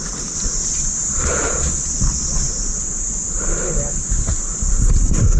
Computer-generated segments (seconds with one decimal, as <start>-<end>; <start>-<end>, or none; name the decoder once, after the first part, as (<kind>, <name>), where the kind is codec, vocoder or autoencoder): 0.6-2.5 (vocoder, Vocos)